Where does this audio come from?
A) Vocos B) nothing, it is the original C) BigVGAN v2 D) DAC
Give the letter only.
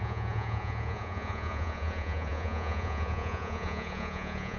A